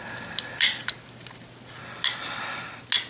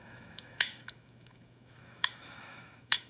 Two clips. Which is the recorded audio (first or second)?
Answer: first